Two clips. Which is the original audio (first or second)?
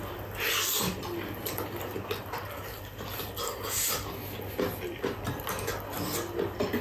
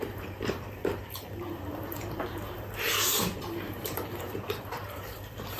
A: first